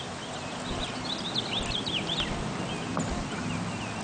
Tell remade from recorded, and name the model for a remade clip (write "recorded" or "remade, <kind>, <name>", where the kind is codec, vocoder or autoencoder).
recorded